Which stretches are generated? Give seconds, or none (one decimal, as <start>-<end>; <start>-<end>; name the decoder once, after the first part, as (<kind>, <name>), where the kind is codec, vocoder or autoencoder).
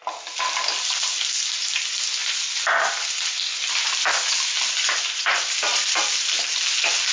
2.2-6.5 (vocoder, BigVGAN v2)